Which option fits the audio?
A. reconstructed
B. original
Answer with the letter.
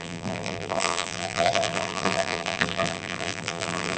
A